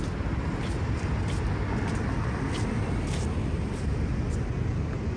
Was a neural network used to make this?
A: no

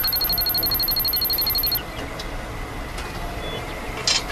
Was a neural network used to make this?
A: no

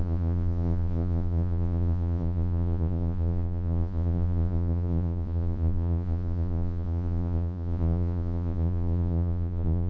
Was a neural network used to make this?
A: yes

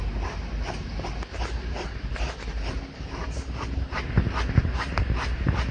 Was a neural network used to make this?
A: no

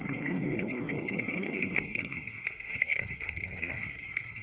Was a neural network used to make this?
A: yes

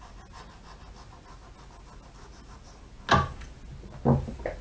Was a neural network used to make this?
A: no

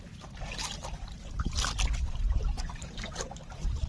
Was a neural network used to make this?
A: yes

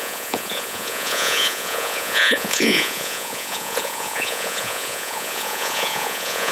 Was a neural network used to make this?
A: yes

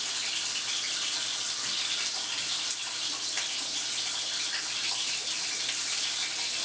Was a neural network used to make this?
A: no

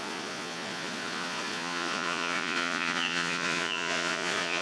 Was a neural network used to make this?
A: yes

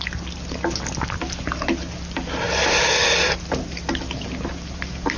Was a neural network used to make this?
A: no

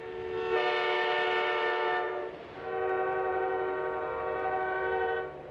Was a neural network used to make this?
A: no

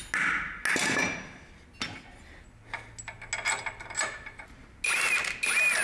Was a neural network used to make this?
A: no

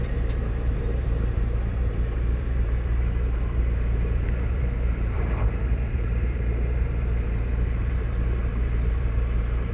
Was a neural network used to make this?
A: yes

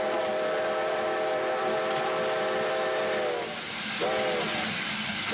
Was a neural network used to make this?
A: no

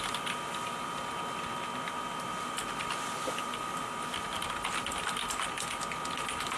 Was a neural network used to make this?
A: no